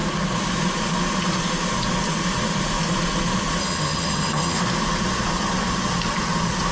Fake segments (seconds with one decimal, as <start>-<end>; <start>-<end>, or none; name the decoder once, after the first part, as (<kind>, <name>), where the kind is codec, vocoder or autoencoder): 3.6-4.6 (vocoder, HiFi-GAN)